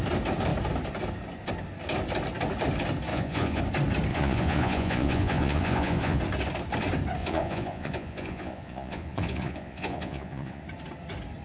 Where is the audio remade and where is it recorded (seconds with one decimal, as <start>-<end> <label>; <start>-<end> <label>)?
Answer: 0.0-3.1 recorded; 3.1-3.6 remade; 3.6-4.1 recorded; 4.1-6.2 remade; 6.2-7.2 recorded; 7.2-10.6 remade; 10.6-11.4 recorded